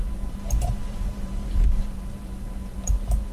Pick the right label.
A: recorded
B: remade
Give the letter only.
B